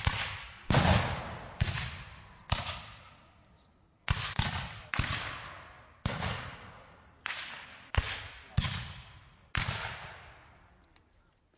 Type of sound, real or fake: real